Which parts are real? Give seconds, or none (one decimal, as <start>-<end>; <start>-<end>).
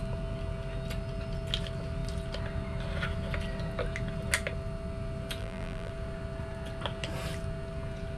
0.0-5.4; 5.9-8.2